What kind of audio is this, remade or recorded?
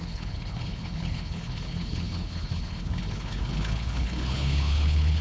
remade